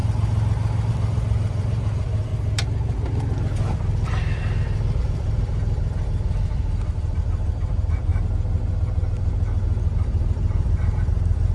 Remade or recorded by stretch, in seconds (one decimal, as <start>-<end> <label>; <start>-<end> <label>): 0.0-0.9 recorded; 0.9-2.3 remade; 2.3-5.0 recorded; 5.0-8.1 remade; 8.1-8.7 recorded; 8.7-11.5 remade